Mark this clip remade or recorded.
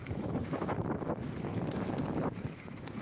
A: remade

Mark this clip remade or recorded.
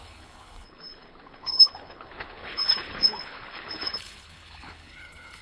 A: remade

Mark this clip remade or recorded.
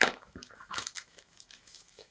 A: remade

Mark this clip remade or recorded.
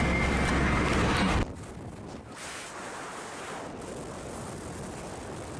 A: recorded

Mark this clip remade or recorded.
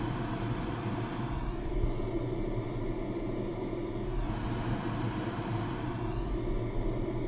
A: recorded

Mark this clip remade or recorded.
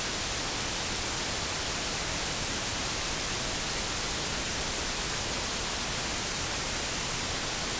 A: recorded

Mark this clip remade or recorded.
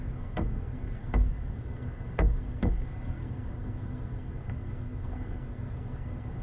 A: remade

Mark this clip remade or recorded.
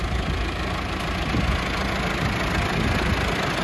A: recorded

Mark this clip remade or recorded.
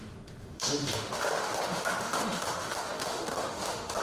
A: remade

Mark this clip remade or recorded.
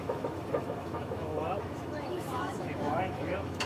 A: remade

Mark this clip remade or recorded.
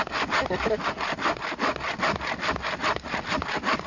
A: recorded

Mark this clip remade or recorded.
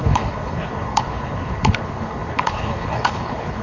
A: remade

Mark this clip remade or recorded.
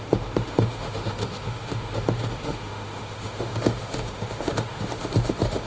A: remade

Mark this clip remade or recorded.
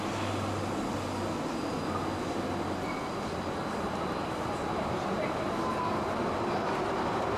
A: recorded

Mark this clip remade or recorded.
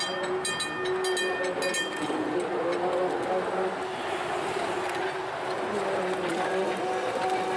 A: recorded